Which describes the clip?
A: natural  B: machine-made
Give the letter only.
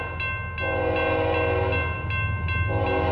A